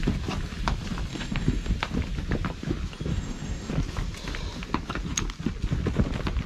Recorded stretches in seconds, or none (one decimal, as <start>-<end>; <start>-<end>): 0.0-1.1; 1.7-3.1; 3.7-6.5